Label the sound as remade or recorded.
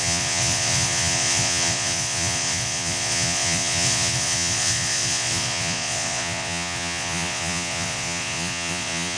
remade